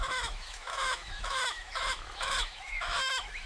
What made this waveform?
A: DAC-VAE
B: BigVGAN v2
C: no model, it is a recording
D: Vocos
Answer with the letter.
A